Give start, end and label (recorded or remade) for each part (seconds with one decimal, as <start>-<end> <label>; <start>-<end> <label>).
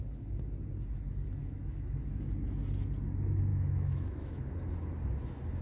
0.0-1.4 recorded; 1.4-2.0 remade; 2.0-3.5 recorded; 3.5-4.5 remade; 4.5-5.6 recorded